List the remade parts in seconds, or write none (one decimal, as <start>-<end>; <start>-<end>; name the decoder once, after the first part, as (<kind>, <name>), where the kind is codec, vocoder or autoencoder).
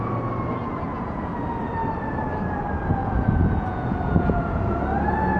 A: 0.6-1.3 (vocoder, Vocos); 3.0-4.6